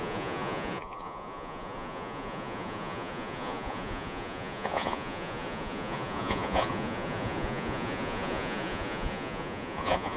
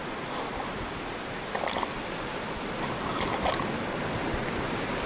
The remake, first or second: first